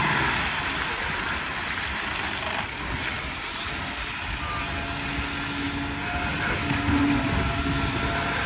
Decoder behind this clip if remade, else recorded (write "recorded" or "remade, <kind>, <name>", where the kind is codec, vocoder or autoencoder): recorded